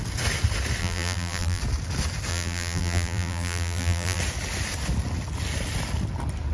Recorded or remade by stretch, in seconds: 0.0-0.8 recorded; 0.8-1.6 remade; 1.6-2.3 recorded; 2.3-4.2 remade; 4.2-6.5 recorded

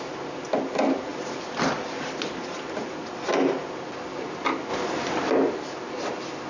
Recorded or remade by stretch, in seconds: 0.0-6.5 recorded

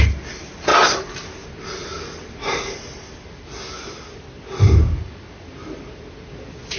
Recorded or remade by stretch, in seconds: 0.0-6.8 recorded

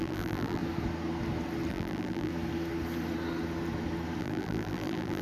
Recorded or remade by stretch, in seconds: 0.0-0.6 remade; 0.6-1.7 recorded; 1.7-2.3 remade; 2.3-4.2 recorded; 4.2-5.2 remade